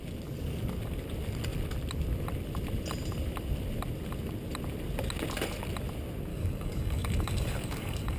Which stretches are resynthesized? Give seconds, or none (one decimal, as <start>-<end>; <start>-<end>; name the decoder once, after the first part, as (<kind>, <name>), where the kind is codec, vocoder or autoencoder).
6.3-8.2 (codec, DAC)